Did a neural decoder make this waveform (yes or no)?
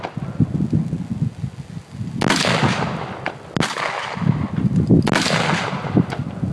no